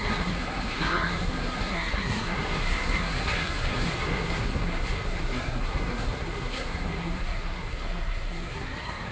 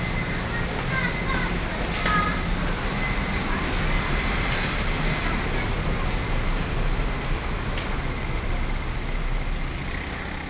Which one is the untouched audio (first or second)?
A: second